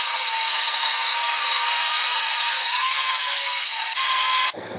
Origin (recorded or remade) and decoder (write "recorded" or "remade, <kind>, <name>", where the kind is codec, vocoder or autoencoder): remade, codec, SNAC